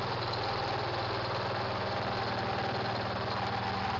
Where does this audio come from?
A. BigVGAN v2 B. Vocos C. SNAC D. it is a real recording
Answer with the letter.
D